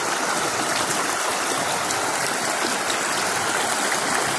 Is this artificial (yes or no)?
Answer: no